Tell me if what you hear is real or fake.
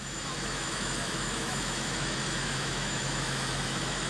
fake